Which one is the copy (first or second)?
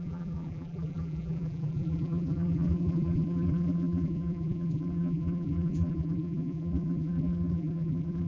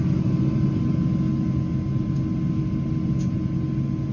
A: first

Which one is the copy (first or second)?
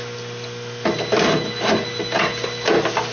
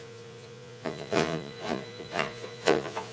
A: second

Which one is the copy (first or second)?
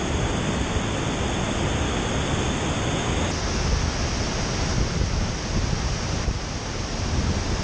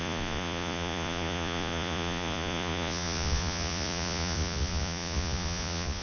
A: second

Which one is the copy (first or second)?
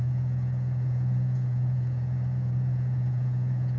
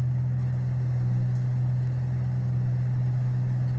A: first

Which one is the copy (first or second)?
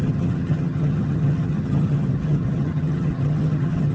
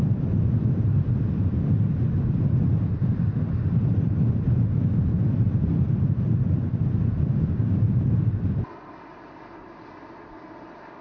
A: first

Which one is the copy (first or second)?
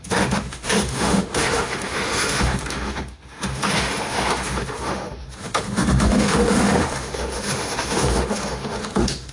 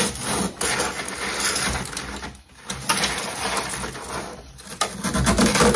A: first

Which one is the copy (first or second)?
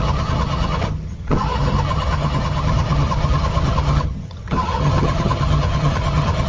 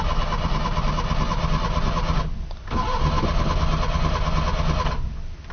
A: first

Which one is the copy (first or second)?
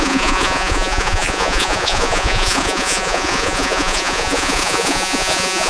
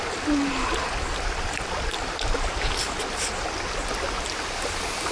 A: first